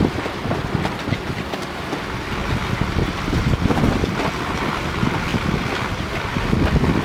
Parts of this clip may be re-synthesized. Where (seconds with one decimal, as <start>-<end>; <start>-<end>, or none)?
none